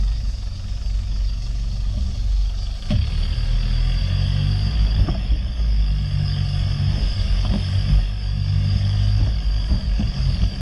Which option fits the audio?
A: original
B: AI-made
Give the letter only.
B